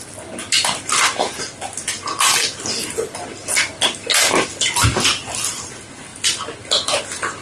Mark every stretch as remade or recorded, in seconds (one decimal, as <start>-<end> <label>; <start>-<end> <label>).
0.0-6.1 recorded; 6.1-6.7 remade; 6.7-7.4 recorded